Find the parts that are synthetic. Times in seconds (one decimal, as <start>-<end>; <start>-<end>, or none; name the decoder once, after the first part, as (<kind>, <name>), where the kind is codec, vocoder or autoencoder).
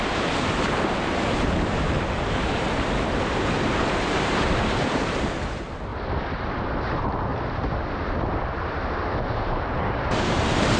0.0-5.9 (vocoder, BigVGAN v2); 6.8-7.3; 9.4-10.8